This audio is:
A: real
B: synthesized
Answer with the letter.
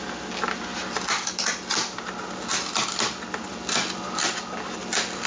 A